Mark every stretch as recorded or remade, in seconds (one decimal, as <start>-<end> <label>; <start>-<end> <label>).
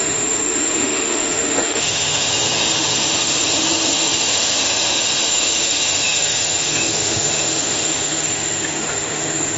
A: 0.0-9.6 remade